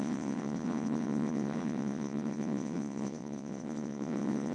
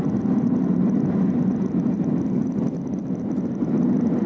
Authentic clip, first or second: second